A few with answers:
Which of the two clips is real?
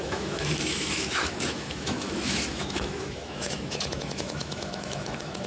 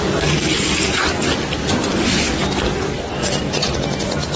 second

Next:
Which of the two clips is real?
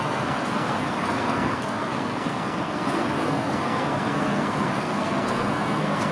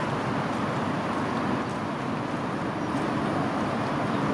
second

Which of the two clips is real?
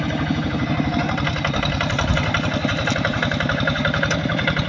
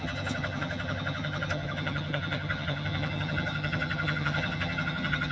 first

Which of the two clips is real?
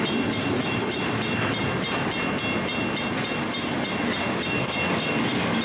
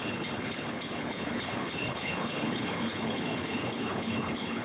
first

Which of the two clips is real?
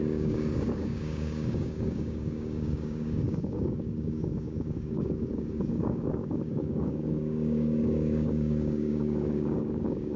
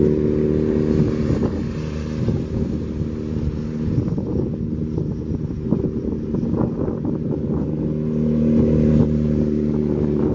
second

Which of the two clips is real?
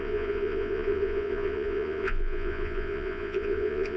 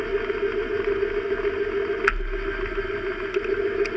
second